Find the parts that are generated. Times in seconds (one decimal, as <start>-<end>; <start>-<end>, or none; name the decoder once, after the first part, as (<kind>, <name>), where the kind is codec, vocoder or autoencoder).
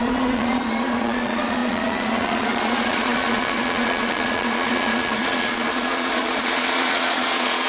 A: 0.0-7.7 (vocoder, Vocos)